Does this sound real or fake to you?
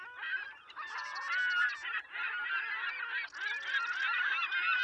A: real